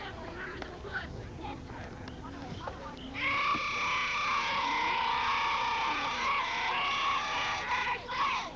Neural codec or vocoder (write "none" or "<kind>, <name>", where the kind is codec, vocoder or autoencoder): none